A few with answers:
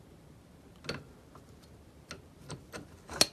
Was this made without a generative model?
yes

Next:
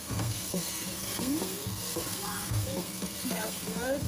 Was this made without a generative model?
no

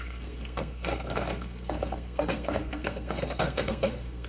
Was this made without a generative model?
no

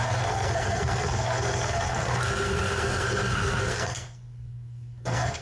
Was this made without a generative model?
no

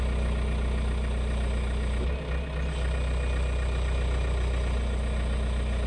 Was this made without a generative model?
yes